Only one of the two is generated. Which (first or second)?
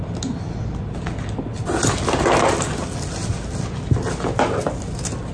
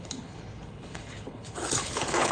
second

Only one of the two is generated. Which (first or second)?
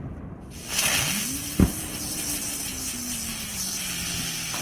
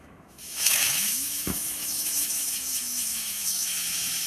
second